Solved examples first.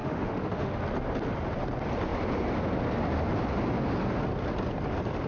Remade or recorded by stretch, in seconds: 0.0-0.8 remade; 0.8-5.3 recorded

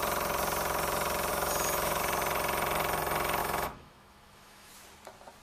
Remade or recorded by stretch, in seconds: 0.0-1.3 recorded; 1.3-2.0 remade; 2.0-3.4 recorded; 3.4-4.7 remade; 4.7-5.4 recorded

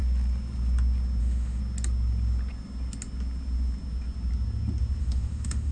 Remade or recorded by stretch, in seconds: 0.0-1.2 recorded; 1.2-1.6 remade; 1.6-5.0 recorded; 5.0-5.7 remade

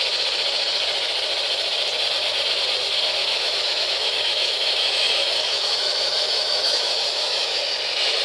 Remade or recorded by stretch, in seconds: 0.0-3.2 recorded; 3.2-7.6 remade; 7.6-8.2 recorded

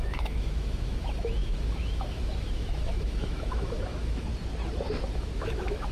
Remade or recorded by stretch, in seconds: 0.0-4.3 remade; 4.3-5.1 recorded; 5.1-5.9 remade

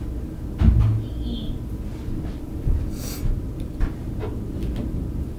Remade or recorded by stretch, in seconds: 0.0-5.4 recorded